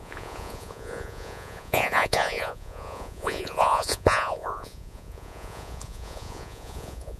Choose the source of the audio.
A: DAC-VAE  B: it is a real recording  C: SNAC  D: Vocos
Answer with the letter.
D